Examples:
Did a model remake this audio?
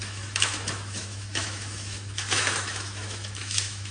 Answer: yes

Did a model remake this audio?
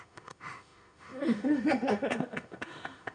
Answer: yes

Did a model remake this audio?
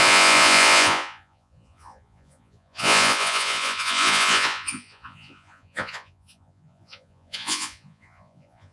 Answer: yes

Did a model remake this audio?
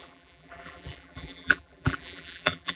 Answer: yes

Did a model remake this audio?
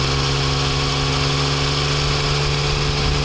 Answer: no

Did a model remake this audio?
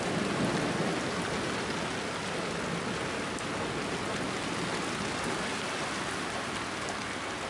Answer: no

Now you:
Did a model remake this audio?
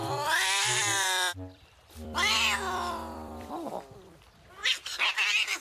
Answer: yes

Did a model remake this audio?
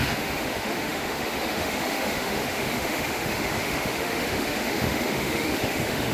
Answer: yes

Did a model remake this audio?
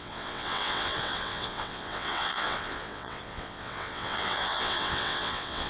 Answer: yes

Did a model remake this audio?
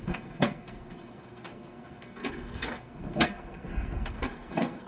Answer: yes